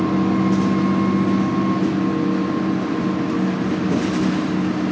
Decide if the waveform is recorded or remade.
recorded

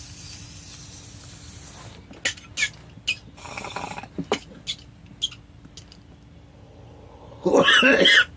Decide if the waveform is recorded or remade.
recorded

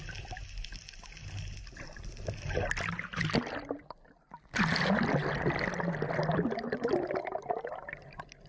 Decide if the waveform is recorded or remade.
recorded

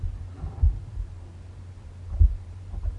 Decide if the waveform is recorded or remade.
remade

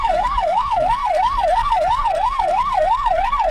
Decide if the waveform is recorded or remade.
remade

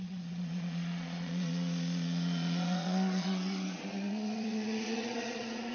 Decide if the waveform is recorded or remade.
remade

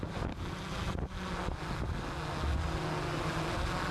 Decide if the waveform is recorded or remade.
recorded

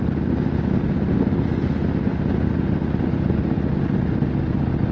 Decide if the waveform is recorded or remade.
recorded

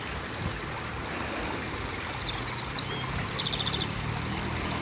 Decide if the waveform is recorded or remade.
recorded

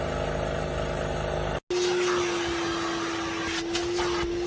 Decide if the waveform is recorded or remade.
recorded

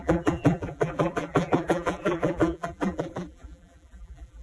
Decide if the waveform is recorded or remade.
remade